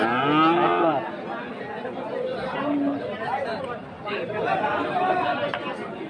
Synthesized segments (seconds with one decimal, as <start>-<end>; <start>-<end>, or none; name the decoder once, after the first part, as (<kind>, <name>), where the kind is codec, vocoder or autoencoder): 2.3-6.1 (vocoder, BigVGAN v2)